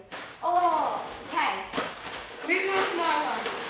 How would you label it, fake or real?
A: fake